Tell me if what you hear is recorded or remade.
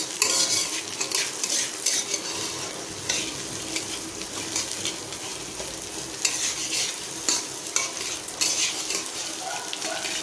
recorded